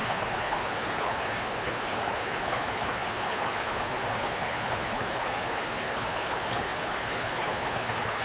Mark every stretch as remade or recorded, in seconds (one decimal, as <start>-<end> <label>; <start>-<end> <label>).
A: 0.0-8.2 remade